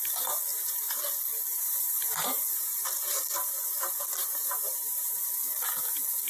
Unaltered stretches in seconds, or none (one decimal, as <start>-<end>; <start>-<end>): 0.0-0.5; 1.0-1.5; 5.3-6.3